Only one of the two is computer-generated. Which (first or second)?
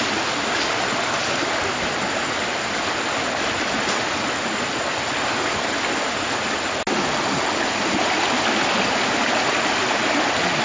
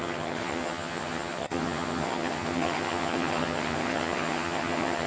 second